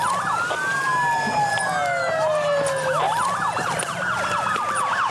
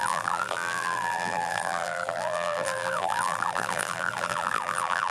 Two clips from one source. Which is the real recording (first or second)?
first